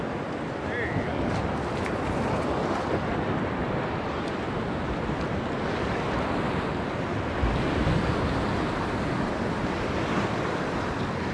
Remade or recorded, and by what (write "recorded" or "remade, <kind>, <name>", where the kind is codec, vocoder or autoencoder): recorded